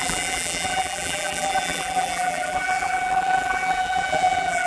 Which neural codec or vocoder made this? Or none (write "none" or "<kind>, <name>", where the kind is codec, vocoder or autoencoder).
vocoder, BigVGAN v2